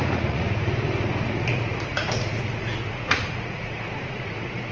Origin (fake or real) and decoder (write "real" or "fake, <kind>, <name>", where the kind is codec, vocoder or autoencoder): fake, vocoder, Vocos